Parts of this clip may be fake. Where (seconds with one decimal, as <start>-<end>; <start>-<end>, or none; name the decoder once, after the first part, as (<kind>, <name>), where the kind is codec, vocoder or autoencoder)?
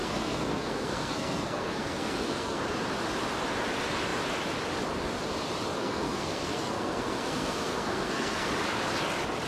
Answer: 0.0-2.6 (codec, SNAC); 5.8-8.5